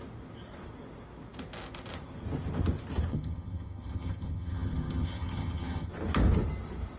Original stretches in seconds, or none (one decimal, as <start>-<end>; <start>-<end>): 0.0-3.1; 5.9-7.0